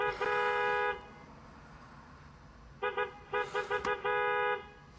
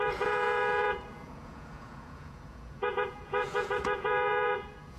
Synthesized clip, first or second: second